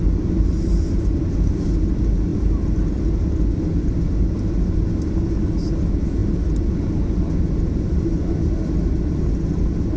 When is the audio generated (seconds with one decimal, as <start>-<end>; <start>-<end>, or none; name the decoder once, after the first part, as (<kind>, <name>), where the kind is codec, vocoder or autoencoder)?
none